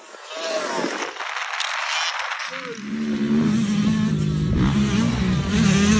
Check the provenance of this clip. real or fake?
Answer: real